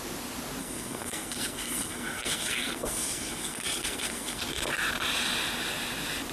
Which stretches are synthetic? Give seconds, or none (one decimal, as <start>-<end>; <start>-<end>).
0.6-4.4